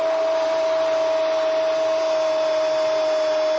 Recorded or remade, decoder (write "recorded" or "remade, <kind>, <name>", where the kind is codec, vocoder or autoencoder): recorded